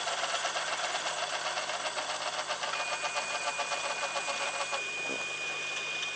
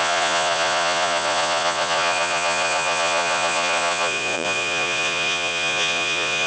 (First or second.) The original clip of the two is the first